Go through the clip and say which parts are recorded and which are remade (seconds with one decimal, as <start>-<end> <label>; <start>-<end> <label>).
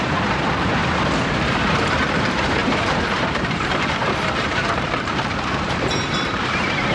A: 0.0-0.8 remade; 0.8-1.4 recorded; 1.4-6.9 remade